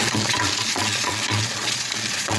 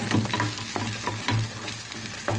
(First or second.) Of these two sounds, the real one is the second